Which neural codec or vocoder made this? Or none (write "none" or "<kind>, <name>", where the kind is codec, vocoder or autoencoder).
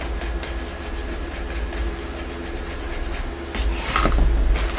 none